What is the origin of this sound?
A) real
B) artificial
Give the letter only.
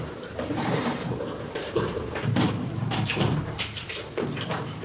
B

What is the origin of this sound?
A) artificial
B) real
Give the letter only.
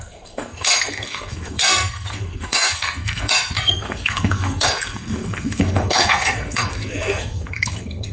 A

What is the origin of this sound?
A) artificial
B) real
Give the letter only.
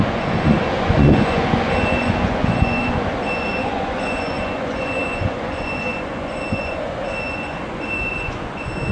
A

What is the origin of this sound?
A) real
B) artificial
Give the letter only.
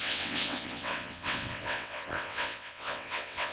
B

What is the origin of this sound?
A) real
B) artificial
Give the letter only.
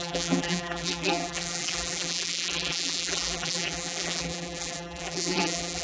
B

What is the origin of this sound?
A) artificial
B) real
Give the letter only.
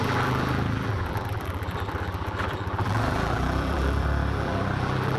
A